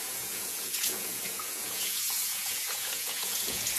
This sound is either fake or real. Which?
fake